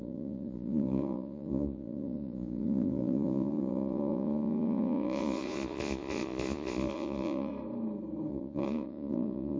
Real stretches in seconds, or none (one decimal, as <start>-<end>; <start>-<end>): 7.5-8.3